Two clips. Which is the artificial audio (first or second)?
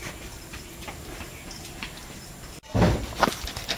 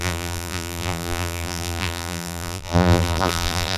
second